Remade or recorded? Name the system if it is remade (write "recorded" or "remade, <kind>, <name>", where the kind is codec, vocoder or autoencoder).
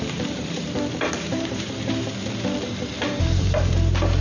remade, vocoder, BigVGAN v2